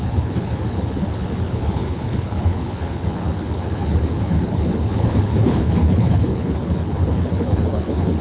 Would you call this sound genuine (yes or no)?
no